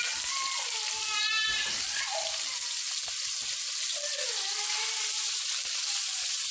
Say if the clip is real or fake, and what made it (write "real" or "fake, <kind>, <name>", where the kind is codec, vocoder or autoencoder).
real